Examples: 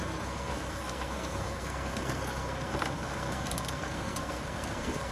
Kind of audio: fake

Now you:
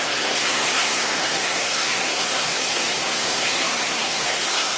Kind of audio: fake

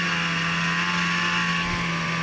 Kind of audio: real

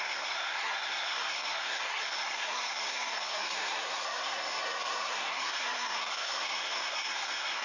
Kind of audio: fake